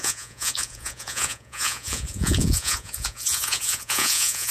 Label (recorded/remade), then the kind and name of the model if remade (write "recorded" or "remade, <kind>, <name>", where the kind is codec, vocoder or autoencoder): remade, vocoder, Vocos